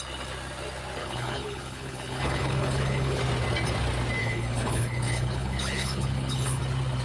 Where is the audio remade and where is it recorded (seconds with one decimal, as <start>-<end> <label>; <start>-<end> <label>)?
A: 0.0-1.0 recorded; 1.0-3.2 remade; 3.2-4.2 recorded; 4.2-6.6 remade; 6.6-7.0 recorded